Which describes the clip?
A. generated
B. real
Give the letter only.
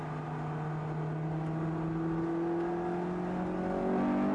B